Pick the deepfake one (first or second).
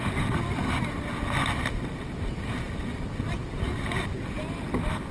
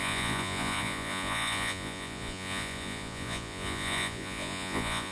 second